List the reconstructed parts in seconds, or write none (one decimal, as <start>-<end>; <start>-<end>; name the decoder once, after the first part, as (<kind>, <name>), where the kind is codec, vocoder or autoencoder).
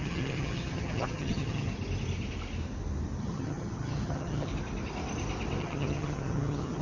0.0-1.7 (vocoder, HiFi-GAN); 3.2-4.5; 5.6-6.8